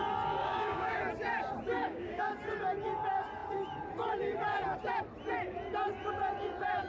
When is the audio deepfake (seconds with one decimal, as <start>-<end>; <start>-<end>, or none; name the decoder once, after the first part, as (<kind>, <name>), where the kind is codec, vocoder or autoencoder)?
0.4-1.0 (codec, DAC); 1.8-2.3